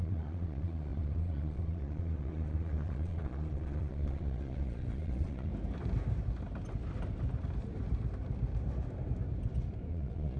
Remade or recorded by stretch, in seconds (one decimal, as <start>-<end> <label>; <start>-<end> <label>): 0.0-5.5 remade; 5.5-9.9 recorded; 9.9-10.4 remade